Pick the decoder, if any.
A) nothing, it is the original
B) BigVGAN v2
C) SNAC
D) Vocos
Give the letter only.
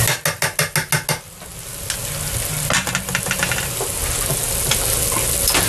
A